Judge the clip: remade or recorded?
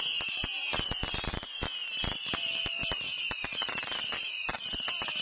recorded